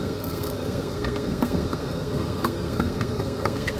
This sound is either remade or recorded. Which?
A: remade